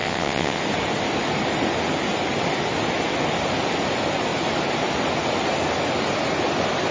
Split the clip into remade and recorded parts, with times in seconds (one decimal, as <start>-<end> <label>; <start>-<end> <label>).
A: 0.0-0.6 remade; 0.6-6.9 recorded